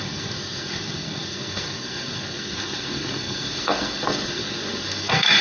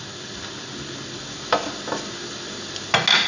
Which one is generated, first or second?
first